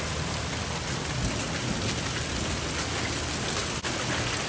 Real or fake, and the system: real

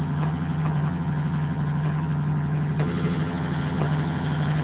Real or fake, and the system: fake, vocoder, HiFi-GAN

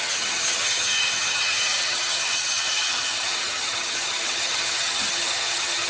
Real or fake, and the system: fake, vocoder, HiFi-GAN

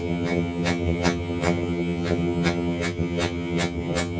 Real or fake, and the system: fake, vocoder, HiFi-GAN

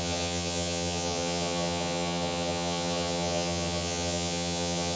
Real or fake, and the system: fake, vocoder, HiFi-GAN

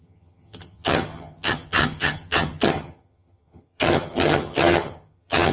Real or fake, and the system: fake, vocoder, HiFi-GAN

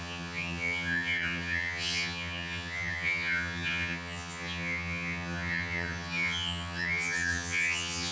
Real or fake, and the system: fake, vocoder, HiFi-GAN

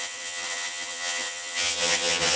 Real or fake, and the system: fake, vocoder, HiFi-GAN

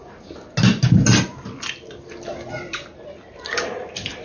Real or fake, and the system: real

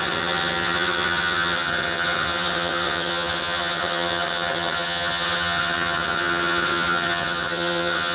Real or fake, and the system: fake, vocoder, HiFi-GAN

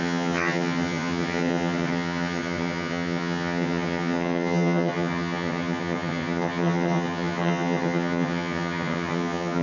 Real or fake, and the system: fake, vocoder, HiFi-GAN